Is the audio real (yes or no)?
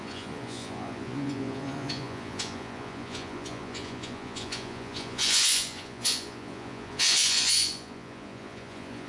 no